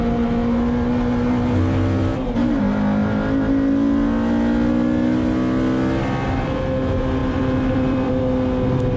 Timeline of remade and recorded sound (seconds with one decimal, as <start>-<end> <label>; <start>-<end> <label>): 0.0-7.2 recorded; 7.2-8.2 remade; 8.2-9.0 recorded